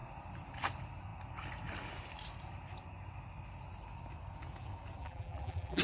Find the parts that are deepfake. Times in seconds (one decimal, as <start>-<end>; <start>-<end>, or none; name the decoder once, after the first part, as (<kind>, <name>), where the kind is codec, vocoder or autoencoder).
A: 5.0-5.8 (vocoder, BigVGAN v2)